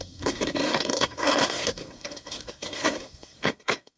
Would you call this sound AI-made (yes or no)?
yes